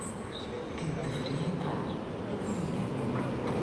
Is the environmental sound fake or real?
real